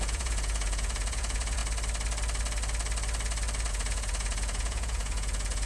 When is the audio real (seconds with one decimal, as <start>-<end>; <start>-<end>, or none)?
1.6-3.7